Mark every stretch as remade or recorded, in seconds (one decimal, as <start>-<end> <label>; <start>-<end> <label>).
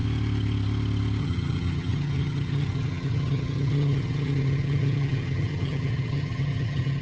0.0-1.2 recorded; 1.2-7.0 remade